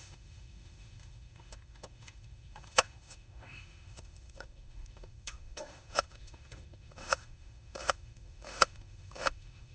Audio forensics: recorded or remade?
remade